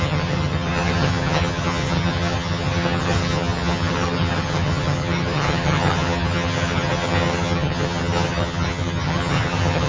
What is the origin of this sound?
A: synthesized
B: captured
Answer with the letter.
A